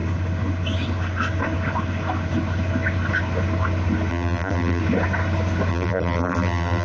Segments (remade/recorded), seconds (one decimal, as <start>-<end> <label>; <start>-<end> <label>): 0.0-4.1 recorded; 4.1-4.8 remade; 4.8-5.7 recorded; 5.7-6.8 remade